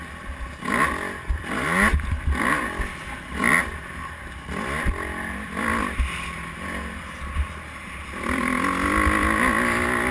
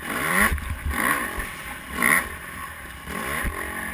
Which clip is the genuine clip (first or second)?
first